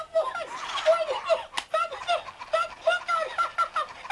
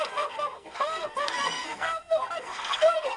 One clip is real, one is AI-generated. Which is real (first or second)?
first